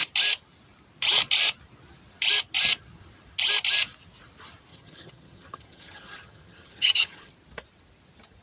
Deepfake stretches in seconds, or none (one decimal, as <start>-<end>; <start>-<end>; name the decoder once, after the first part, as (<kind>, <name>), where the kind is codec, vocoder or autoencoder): 4.7-7.3 (vocoder, HiFi-GAN)